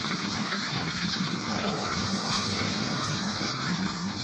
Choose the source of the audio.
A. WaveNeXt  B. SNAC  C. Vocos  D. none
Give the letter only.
B